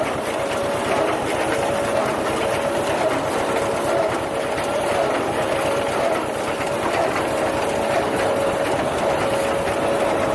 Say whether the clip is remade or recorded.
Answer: recorded